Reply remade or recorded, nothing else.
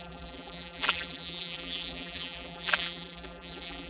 remade